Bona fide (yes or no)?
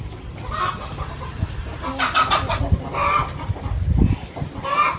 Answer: yes